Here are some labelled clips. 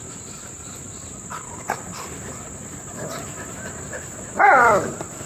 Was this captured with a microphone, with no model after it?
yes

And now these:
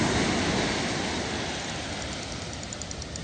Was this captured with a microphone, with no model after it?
yes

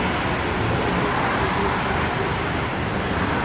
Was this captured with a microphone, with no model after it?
yes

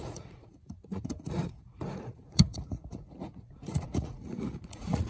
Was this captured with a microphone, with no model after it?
no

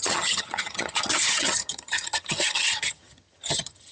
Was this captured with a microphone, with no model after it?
no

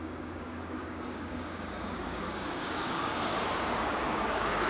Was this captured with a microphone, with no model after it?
no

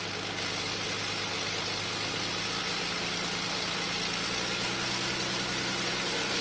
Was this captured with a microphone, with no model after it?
yes